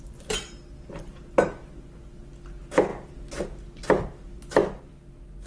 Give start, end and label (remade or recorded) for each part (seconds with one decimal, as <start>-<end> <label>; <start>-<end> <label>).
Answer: 0.0-5.5 recorded